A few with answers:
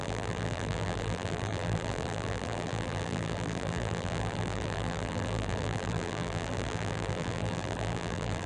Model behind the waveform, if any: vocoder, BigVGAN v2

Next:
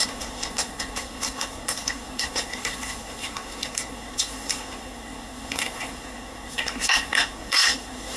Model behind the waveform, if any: codec, SNAC